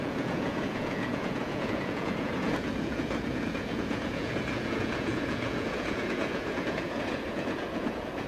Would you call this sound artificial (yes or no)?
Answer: yes